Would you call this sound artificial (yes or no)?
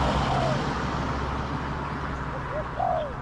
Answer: no